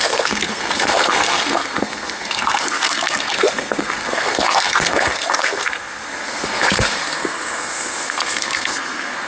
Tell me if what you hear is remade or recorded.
remade